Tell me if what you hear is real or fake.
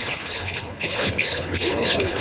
fake